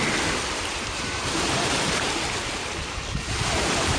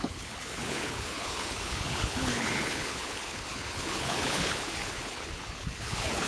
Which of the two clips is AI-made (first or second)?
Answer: second